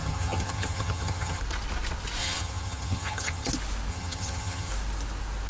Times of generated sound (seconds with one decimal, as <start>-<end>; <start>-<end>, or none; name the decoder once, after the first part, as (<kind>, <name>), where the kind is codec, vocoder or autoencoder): 0.0-1.4 (vocoder, HiFi-GAN); 2.2-3.5; 3.9-4.7